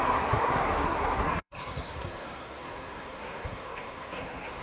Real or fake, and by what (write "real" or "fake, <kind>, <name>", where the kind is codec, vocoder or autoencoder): fake, codec, SNAC